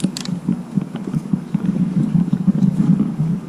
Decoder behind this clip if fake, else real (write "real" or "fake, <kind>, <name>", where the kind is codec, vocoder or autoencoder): fake, codec, DAC